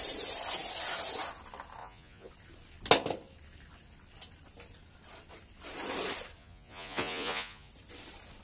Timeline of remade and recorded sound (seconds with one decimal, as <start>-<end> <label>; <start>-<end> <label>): 0.0-1.8 recorded; 1.8-2.3 remade; 2.3-6.4 recorded; 6.4-7.7 remade; 7.7-8.4 recorded